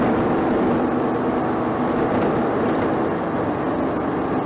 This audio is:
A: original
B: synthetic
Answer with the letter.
A